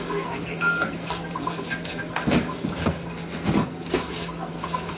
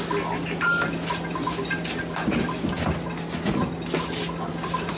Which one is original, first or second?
second